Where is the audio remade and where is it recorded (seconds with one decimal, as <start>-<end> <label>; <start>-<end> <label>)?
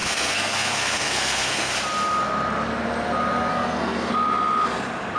0.0-1.7 remade; 1.7-3.5 recorded; 3.5-4.1 remade; 4.1-5.2 recorded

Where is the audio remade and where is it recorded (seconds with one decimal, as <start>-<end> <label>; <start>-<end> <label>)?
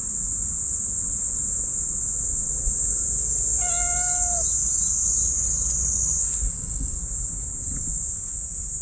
0.0-6.5 recorded; 6.5-7.0 remade; 7.0-8.8 recorded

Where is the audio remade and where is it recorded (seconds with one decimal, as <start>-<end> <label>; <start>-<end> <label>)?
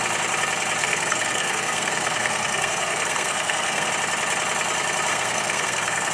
0.0-0.8 recorded; 0.8-3.9 remade; 3.9-5.1 recorded; 5.1-6.1 remade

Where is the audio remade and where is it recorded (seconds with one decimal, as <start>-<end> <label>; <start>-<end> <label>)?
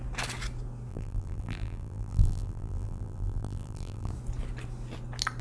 0.0-0.9 recorded; 0.9-4.1 remade; 4.1-5.4 recorded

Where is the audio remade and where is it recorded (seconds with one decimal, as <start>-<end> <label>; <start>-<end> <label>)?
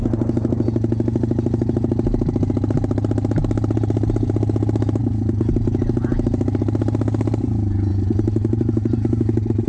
0.0-9.7 recorded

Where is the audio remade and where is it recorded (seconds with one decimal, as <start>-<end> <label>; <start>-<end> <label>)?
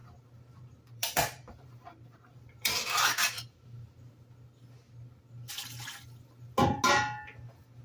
0.0-4.1 remade; 4.1-7.8 recorded